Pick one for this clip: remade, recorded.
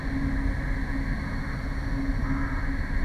recorded